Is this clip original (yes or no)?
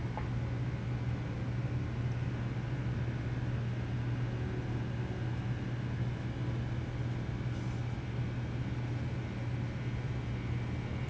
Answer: yes